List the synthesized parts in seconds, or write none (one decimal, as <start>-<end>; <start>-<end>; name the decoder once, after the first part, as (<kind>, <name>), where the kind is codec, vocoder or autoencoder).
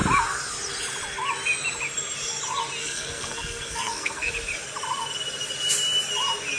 2.8-4.3 (codec, SNAC)